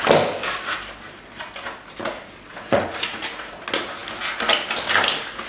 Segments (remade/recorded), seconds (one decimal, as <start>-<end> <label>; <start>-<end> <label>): 0.0-2.5 recorded; 2.5-3.6 remade; 3.6-5.5 recorded